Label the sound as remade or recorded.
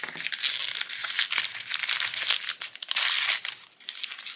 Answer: recorded